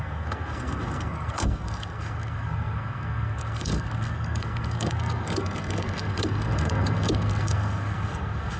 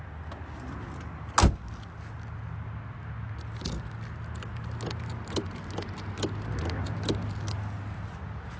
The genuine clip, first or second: second